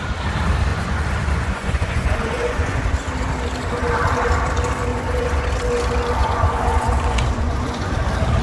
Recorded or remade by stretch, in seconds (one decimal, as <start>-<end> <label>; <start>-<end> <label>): 0.0-0.7 recorded; 0.7-2.8 remade; 2.8-4.9 recorded; 4.9-5.5 remade; 5.5-6.2 recorded; 6.2-7.9 remade; 7.9-8.4 recorded